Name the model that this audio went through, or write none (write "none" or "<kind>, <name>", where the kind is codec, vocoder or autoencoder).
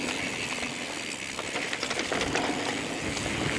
none